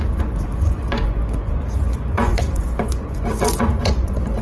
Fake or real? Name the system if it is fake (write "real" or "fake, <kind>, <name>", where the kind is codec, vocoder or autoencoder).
fake, vocoder, Vocos